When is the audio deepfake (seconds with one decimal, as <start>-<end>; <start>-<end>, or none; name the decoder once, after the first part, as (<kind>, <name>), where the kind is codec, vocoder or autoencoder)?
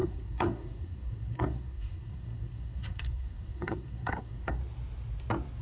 0.0-4.6 (codec, SNAC)